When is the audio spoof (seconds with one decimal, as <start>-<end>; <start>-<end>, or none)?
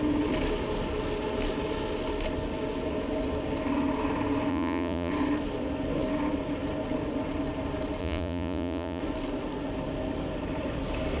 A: 4.5-5.1; 8.0-9.0